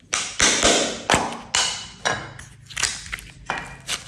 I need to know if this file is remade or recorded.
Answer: recorded